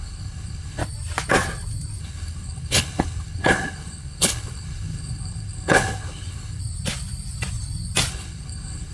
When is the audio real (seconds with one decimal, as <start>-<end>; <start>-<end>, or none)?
0.8-2.0; 6.6-8.1